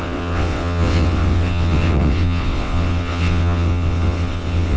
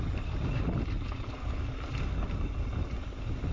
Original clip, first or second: second